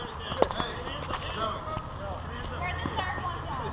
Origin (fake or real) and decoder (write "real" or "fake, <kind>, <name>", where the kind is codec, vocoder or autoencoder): real